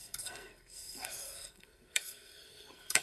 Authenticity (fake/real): fake